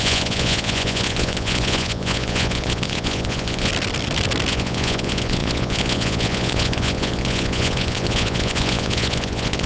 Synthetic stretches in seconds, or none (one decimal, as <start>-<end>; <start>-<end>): 0.0-3.7; 4.5-9.7